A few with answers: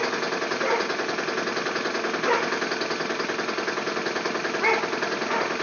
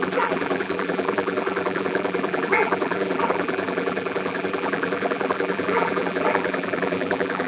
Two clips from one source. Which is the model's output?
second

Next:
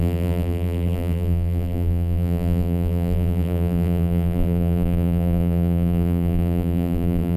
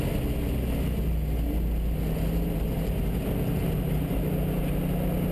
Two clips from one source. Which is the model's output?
first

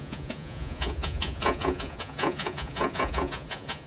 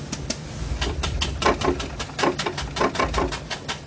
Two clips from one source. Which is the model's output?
first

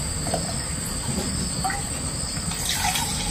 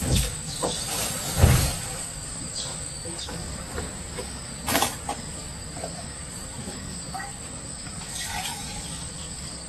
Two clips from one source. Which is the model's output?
second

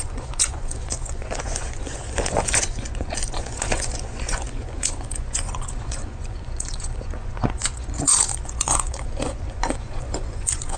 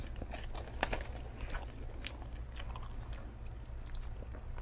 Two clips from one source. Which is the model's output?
first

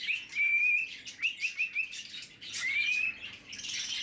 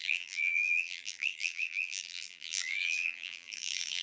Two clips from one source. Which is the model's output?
second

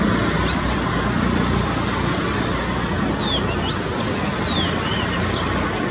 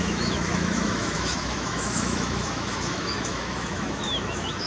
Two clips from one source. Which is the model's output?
second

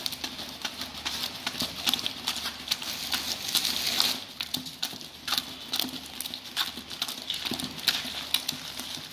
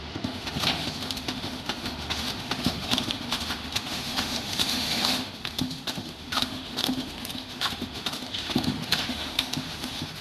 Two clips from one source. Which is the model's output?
second